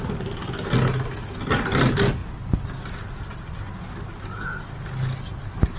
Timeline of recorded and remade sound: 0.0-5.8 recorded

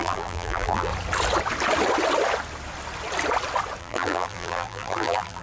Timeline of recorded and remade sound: 0.0-0.9 remade; 0.9-3.8 recorded; 3.8-5.4 remade

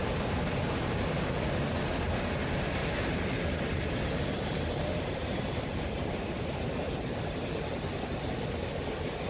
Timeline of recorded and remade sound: 0.0-0.6 recorded; 0.6-1.3 remade; 1.3-2.8 recorded; 2.8-7.3 remade; 7.3-9.3 recorded

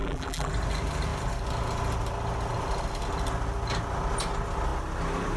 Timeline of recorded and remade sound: 0.0-0.5 remade; 0.5-5.4 recorded

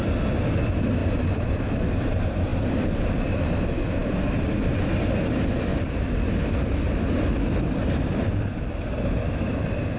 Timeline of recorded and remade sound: 0.0-2.5 recorded; 2.5-3.6 remade; 3.6-4.0 recorded; 4.0-4.7 remade; 4.7-5.7 recorded; 5.7-7.0 remade; 7.0-10.0 recorded

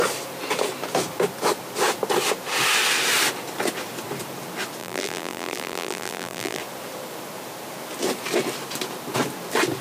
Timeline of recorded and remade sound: 0.0-4.8 recorded; 4.8-6.6 remade; 6.6-9.8 recorded

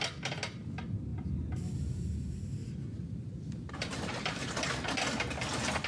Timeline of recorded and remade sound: 0.0-1.1 recorded; 1.1-1.6 remade; 1.6-2.6 recorded; 2.6-4.5 remade; 4.5-5.9 recorded